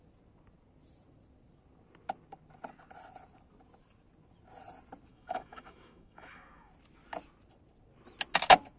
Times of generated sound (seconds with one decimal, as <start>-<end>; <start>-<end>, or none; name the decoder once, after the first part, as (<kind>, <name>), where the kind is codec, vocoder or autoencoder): 5.1-6.7 (autoencoder, DAC-VAE)